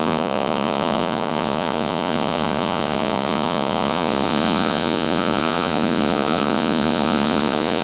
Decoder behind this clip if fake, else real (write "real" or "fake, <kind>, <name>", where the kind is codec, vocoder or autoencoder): fake, vocoder, Vocos